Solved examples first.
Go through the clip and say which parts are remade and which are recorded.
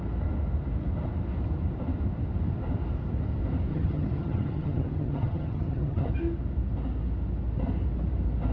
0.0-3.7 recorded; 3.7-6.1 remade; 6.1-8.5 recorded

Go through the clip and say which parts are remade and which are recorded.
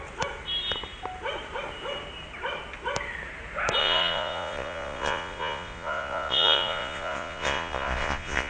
0.0-3.8 recorded; 3.8-8.5 remade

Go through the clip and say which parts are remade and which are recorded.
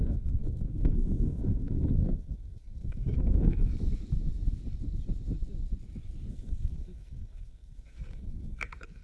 0.0-3.7 remade; 3.7-6.3 recorded; 6.3-9.0 remade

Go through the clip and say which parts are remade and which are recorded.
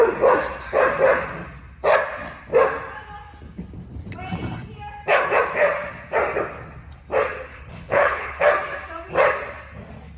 0.0-7.5 recorded; 7.5-8.4 remade; 8.4-10.2 recorded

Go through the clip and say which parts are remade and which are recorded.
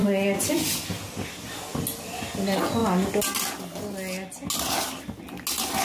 0.0-5.8 recorded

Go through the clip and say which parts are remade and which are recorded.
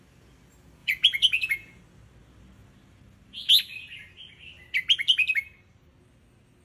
0.0-0.8 recorded; 0.8-1.8 remade; 1.8-6.6 recorded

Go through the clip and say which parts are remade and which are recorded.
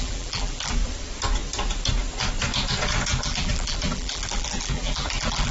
0.0-0.8 remade; 0.8-3.2 recorded; 3.2-5.5 remade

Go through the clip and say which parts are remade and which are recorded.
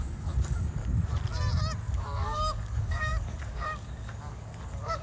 0.0-0.8 remade; 0.8-1.9 recorded; 1.9-5.0 remade